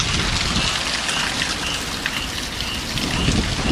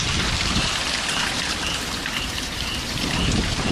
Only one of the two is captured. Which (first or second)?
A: first